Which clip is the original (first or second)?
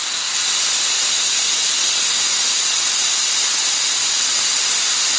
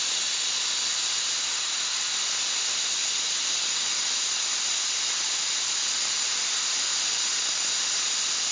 first